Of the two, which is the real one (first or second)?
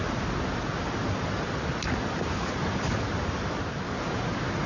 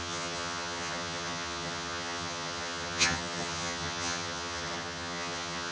first